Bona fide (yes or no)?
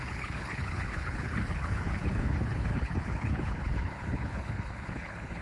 no